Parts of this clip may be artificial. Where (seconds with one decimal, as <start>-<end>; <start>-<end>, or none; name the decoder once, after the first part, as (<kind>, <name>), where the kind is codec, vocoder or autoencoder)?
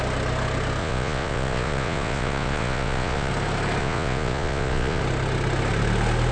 0.8-3.3 (vocoder, Vocos); 3.8-5.0